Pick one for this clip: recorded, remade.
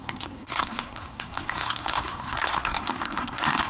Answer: remade